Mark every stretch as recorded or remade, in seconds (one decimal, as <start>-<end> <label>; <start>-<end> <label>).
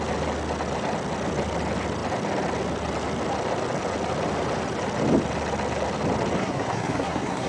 0.0-6.4 recorded; 6.4-7.5 remade